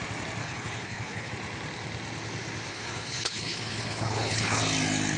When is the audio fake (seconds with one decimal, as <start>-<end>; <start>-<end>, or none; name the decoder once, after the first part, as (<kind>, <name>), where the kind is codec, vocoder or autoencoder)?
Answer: 0.4-1.3 (codec, HILCodec); 2.7-4.6